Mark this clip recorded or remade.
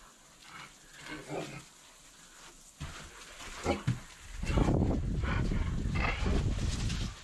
recorded